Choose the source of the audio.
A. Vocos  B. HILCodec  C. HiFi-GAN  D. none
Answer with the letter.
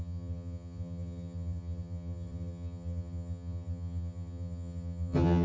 C